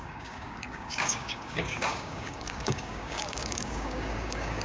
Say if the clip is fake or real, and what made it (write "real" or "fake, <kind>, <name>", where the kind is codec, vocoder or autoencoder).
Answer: fake, codec, DAC